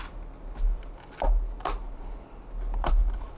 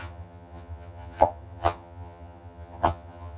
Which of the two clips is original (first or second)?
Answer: first